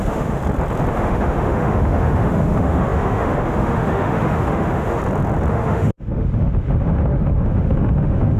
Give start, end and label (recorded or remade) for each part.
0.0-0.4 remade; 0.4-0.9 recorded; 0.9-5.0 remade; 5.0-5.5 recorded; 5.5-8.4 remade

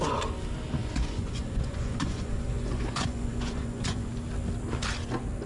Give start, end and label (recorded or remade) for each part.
0.0-0.8 recorded; 0.8-4.1 remade; 4.1-5.5 recorded

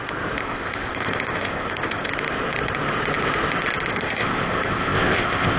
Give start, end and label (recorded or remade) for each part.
0.0-0.4 recorded; 0.4-2.1 remade; 2.1-3.9 recorded; 3.9-5.6 remade

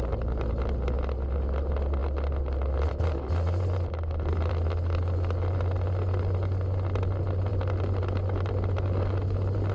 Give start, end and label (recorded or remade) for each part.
0.0-9.7 recorded

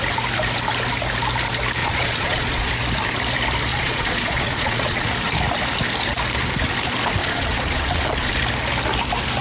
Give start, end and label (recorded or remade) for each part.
0.0-1.8 recorded; 1.8-2.7 remade; 2.7-3.7 recorded; 3.7-5.1 remade; 5.1-7.2 recorded; 7.2-8.3 remade; 8.3-9.4 recorded